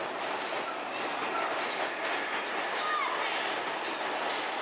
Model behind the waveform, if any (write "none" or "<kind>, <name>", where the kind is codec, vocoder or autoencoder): none